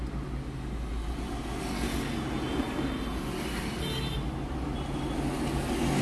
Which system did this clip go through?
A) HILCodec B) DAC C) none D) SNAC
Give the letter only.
C